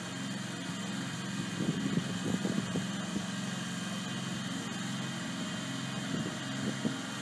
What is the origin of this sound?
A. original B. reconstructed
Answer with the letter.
A